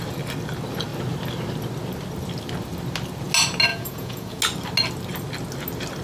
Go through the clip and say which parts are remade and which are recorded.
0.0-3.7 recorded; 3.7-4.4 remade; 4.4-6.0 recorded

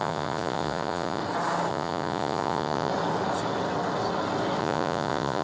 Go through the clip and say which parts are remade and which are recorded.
0.0-1.2 remade; 1.2-1.7 recorded; 1.7-2.9 remade; 2.9-4.6 recorded; 4.6-5.4 remade

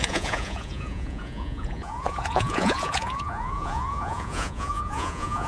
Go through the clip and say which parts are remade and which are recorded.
0.0-5.5 remade

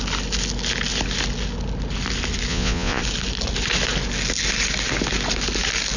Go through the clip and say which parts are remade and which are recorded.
0.0-2.5 recorded; 2.5-3.0 remade; 3.0-6.0 recorded

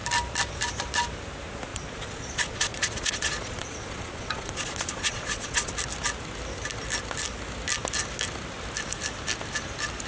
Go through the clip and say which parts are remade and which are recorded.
0.0-1.7 recorded; 1.7-5.7 remade; 5.7-10.1 recorded

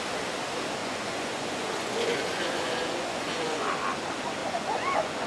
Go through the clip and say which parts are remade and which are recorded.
0.0-0.8 recorded; 0.8-3.7 remade; 3.7-4.4 recorded; 4.4-5.3 remade